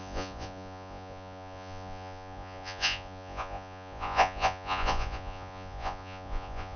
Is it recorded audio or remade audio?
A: remade